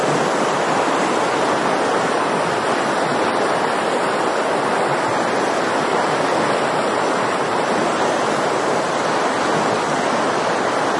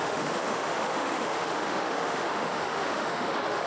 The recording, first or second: first